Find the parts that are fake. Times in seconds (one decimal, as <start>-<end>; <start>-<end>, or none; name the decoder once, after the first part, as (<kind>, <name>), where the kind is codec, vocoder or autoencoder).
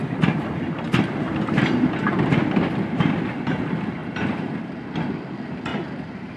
4.0-4.6 (vocoder, BigVGAN v2); 5.7-6.4